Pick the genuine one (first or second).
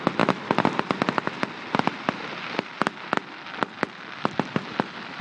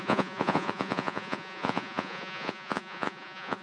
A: first